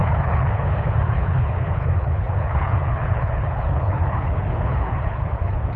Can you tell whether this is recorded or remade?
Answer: remade